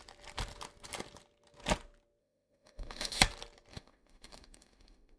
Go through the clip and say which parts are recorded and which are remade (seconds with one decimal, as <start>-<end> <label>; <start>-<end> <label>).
0.0-2.2 recorded; 2.2-3.2 remade; 3.2-3.7 recorded; 3.7-5.2 remade